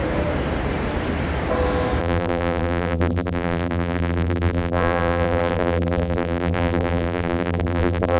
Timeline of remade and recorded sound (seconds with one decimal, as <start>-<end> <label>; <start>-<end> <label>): 0.0-2.0 recorded; 2.0-8.2 remade